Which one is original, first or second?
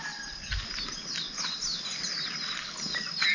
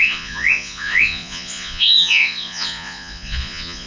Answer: first